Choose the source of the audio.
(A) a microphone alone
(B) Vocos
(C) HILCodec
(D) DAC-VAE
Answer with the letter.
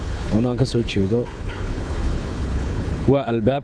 C